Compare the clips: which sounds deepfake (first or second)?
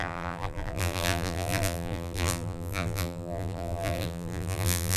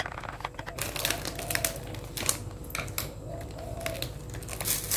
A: first